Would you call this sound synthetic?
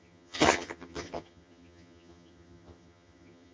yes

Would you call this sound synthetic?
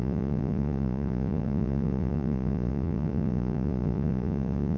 yes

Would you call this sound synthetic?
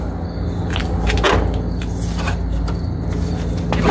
no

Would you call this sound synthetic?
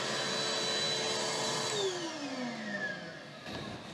no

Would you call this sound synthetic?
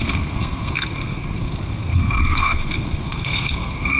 yes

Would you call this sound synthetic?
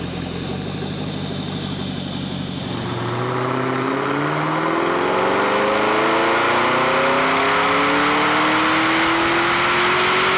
no